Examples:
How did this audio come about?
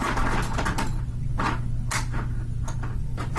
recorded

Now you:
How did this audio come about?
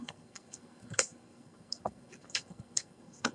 remade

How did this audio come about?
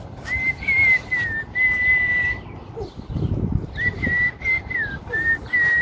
recorded